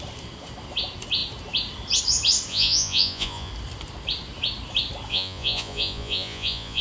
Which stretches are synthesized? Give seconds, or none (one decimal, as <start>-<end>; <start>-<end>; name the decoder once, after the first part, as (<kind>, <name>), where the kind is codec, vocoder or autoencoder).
2.5-3.5 (vocoder, Vocos); 5.1-6.8